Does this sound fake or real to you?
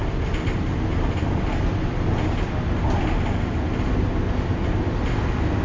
real